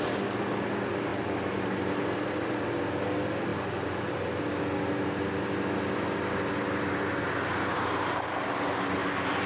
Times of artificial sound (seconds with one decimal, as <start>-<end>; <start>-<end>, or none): none